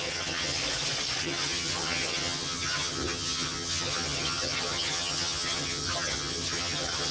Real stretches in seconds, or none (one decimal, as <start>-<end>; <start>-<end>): 0.6-1.2